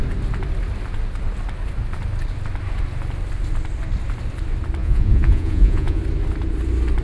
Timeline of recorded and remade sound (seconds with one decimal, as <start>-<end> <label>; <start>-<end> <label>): 0.0-4.8 recorded; 4.8-6.0 remade; 6.0-7.0 recorded